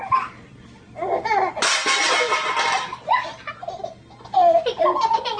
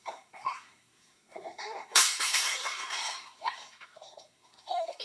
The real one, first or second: first